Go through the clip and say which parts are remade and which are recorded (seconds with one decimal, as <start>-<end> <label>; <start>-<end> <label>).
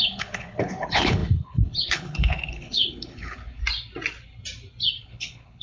0.0-3.6 remade; 3.6-5.0 recorded; 5.0-5.6 remade